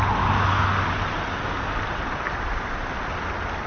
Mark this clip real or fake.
real